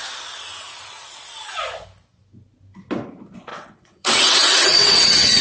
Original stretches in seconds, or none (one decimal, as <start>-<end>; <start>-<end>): 0.0-3.5